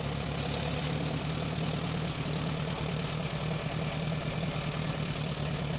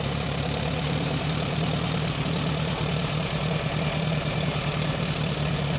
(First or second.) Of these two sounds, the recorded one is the first